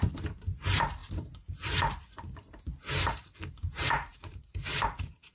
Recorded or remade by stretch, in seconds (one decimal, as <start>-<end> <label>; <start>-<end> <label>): 0.0-5.3 remade